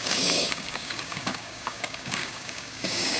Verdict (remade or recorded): remade